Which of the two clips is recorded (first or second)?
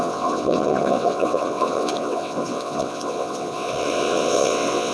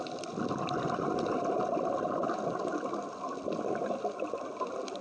second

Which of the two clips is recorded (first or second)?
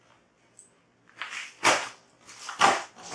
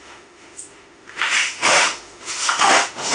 first